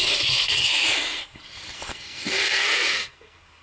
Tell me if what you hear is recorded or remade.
remade